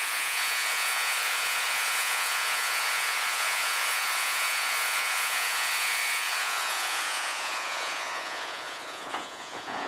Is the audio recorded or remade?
remade